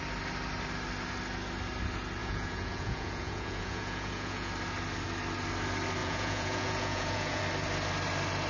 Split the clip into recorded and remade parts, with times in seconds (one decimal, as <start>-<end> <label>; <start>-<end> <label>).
0.0-2.2 recorded; 2.2-4.5 remade; 4.5-6.0 recorded; 6.0-7.4 remade; 7.4-8.5 recorded